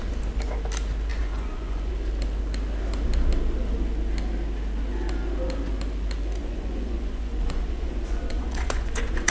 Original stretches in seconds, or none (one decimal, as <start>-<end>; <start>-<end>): 0.0-1.1; 1.9-6.4